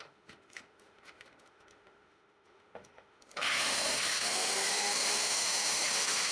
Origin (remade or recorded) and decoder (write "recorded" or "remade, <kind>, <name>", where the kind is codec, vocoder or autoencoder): remade, autoencoder, DAC-VAE